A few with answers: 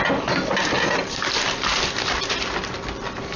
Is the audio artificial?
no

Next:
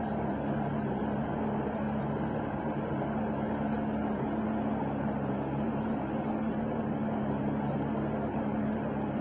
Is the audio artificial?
no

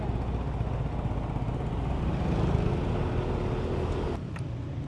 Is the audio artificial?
no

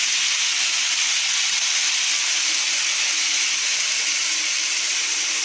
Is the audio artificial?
yes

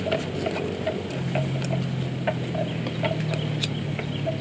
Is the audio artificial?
no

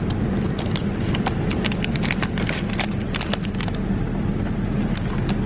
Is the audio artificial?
no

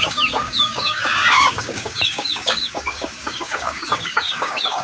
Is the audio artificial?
yes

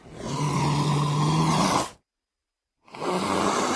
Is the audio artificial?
no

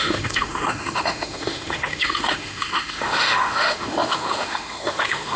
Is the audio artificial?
yes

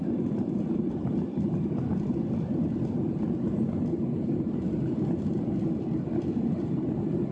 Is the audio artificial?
no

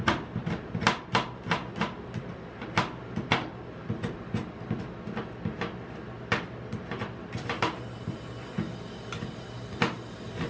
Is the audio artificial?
no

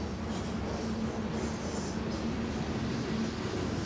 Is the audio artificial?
no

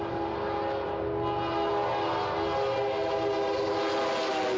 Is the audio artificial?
no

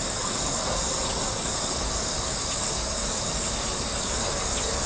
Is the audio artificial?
yes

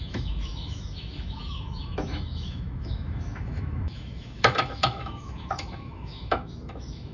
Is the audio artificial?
yes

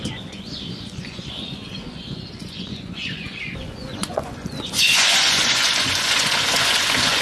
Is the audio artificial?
yes